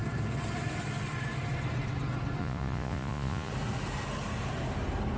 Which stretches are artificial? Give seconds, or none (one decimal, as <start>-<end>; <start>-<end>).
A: 2.4-3.5